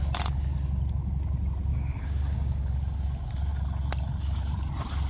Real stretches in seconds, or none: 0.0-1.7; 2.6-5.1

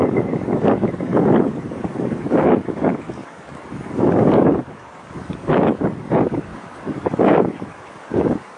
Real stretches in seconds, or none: none

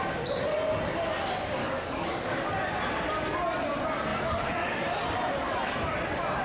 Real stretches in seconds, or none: 0.0-1.6; 2.5-4.1; 4.7-6.4

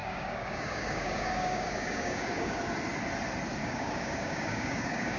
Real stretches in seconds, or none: 2.6-3.6

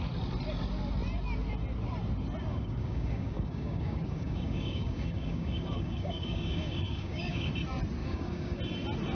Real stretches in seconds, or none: 0.0-2.5; 7.5-8.0; 8.6-9.1

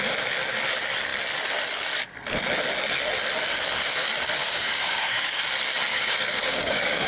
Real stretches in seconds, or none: 0.0-4.4; 5.4-5.9

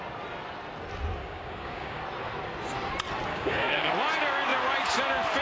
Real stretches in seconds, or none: 0.0-1.2; 2.0-3.3; 3.9-5.4

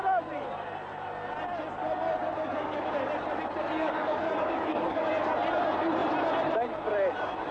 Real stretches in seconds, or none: 0.0-2.3; 2.9-3.8; 5.1-7.5